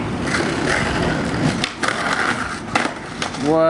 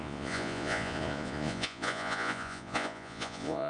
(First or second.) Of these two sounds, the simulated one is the second